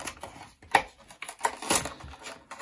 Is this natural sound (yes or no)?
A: yes